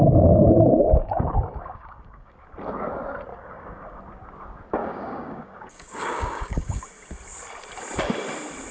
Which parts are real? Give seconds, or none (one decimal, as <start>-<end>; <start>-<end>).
0.0-0.8; 2.3-3.3; 4.0-4.8; 6.8-8.7